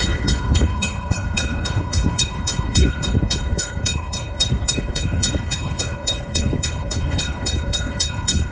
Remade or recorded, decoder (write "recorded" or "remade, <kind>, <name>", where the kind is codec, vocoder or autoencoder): remade, codec, HILCodec